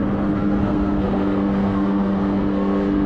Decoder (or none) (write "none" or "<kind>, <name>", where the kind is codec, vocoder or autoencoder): codec, SNAC